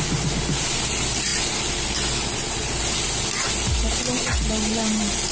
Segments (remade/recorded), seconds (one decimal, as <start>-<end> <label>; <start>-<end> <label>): 0.0-5.3 recorded